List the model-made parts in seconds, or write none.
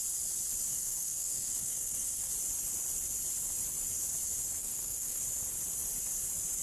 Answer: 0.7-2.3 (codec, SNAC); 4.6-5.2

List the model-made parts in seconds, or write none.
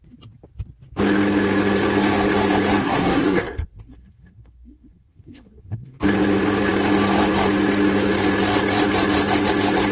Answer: 2.8-6.0 (codec, SNAC)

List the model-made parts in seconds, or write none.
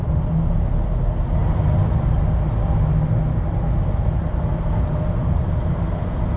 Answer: none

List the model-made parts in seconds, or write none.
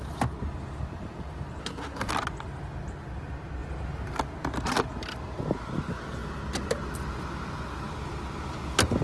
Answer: 1.6-2.1 (codec, SNAC)